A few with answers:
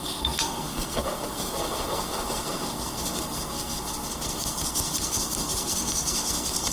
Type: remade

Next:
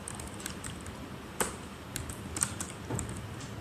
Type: recorded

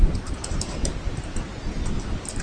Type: recorded